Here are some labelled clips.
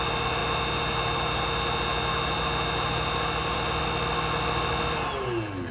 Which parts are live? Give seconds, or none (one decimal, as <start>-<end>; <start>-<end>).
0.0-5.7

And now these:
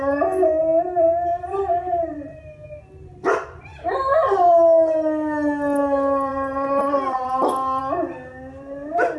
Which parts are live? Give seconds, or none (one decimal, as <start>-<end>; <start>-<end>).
0.0-1.3; 2.4-3.7; 4.5-9.2

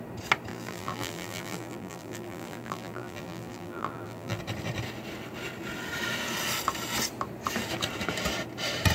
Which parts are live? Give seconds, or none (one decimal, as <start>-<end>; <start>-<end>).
0.0-0.5; 4.4-8.9

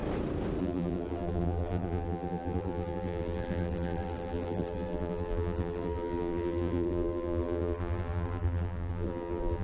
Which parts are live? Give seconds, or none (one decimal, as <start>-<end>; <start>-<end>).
0.0-0.6